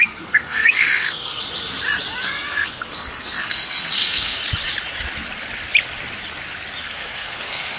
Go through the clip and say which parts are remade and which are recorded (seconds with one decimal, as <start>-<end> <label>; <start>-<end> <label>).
0.0-1.4 remade; 1.4-2.2 recorded; 2.2-4.4 remade; 4.4-6.8 recorded; 6.8-7.8 remade